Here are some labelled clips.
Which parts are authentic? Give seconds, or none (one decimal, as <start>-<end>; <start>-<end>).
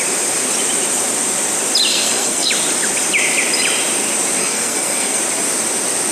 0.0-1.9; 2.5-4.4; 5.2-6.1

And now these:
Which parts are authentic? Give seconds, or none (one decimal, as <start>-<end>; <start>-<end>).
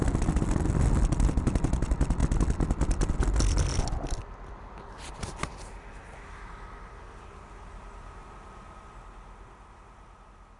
0.0-10.6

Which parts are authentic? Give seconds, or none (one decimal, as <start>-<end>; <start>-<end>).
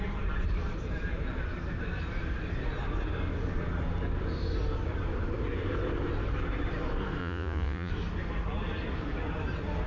0.0-7.2; 7.9-9.9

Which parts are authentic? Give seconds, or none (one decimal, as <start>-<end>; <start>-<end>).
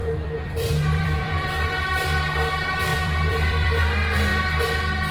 2.2-2.9; 3.8-5.1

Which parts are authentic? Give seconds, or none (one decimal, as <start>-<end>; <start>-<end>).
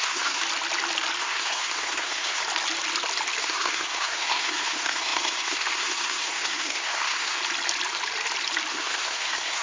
0.4-1.2; 2.4-3.4; 7.4-8.7